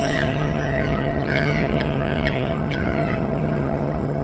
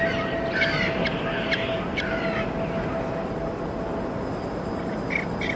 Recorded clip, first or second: second